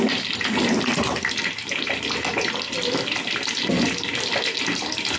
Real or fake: real